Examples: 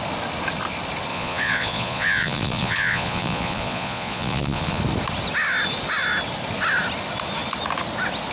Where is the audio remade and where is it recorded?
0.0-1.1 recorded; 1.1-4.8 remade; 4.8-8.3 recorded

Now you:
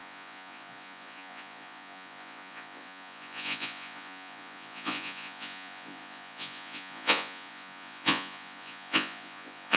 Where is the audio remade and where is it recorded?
0.0-9.8 remade

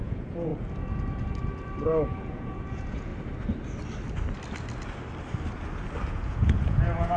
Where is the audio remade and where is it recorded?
0.0-0.5 remade; 0.5-2.2 recorded; 2.2-3.1 remade; 3.1-6.1 recorded; 6.1-7.2 remade